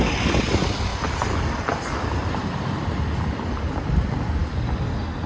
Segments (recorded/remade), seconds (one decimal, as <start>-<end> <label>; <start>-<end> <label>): 0.0-0.9 recorded; 0.9-3.6 remade; 3.6-4.4 recorded; 4.4-5.3 remade